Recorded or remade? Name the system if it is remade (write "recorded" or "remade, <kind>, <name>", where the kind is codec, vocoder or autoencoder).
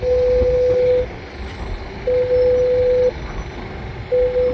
recorded